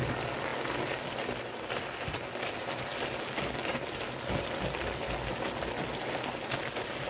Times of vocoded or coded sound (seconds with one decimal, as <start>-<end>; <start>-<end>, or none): none